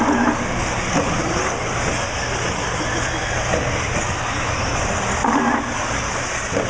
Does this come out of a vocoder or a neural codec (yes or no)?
no